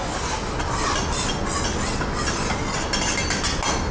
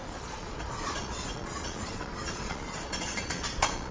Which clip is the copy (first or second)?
second